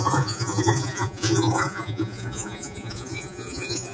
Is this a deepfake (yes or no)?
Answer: yes